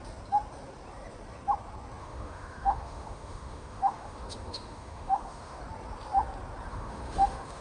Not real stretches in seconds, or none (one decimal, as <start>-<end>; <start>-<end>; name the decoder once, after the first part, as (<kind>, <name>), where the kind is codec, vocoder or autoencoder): 2.0-5.6 (autoencoder, DAC-VAE); 6.7-7.6